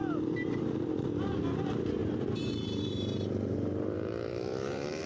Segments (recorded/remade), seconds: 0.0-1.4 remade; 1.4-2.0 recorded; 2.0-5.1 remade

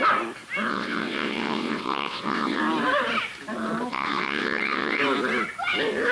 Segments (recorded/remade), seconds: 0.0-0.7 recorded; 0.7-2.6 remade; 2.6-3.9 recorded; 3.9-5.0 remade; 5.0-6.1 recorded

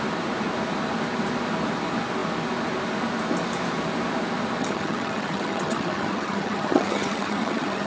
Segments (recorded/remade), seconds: 0.0-4.6 recorded; 4.6-7.9 remade